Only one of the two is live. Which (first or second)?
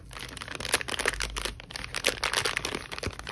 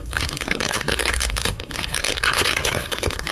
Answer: first